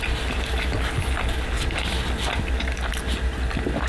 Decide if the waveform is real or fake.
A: real